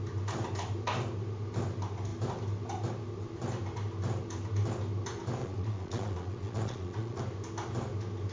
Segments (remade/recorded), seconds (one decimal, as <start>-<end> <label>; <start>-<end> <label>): 0.0-5.4 recorded; 5.4-7.2 remade; 7.2-8.3 recorded